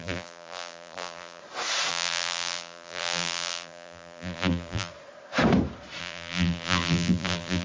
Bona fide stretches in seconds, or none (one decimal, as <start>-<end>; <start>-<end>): 1.4-1.9; 4.9-6.0